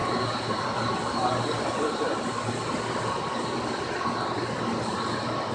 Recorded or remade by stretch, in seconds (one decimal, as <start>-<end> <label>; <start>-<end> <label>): 0.0-5.5 recorded